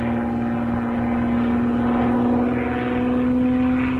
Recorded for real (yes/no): yes